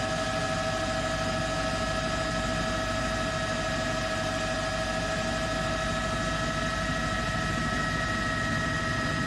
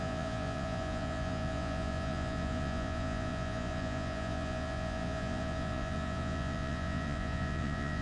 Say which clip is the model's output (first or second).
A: second